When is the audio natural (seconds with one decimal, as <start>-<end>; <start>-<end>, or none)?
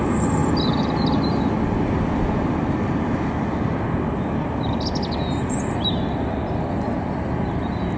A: 0.0-8.0